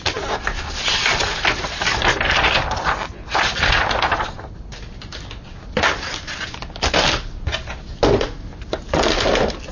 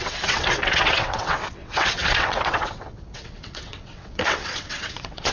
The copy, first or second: second